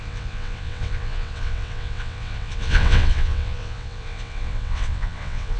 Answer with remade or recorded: remade